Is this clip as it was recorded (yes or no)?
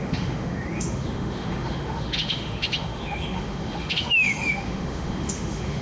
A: no